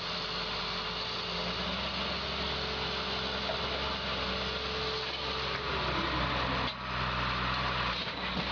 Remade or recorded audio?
recorded